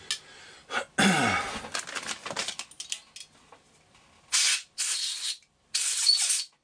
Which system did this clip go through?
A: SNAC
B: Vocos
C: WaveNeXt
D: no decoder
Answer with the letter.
D